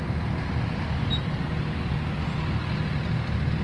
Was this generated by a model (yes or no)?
no